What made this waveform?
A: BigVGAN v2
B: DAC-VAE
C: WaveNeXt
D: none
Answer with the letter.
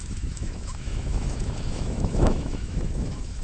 B